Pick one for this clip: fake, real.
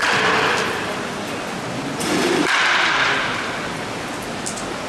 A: real